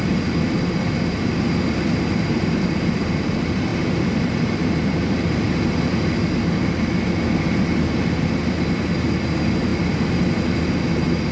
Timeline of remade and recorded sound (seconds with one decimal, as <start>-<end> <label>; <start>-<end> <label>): 0.0-11.3 recorded